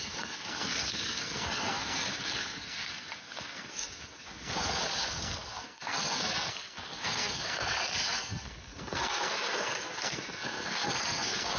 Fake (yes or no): yes